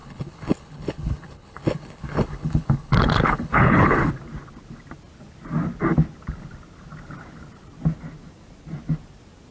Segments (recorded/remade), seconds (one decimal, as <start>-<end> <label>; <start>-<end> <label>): 0.0-4.1 remade; 4.1-9.5 recorded